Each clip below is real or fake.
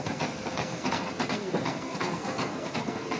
fake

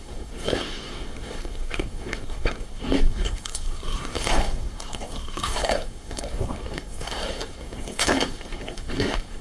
fake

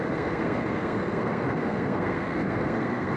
fake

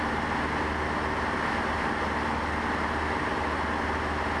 real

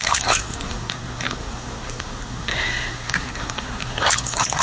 fake